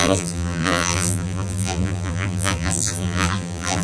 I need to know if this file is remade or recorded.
remade